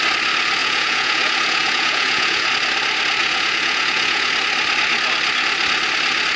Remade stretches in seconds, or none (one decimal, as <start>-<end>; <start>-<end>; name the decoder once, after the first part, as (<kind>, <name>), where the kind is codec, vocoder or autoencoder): 0.6-2.5 (vocoder, Vocos); 3.2-4.3